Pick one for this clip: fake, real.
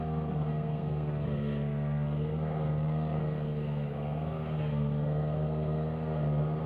fake